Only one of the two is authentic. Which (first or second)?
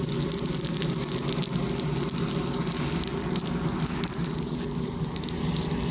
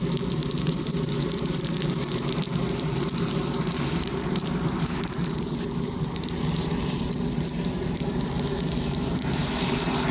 first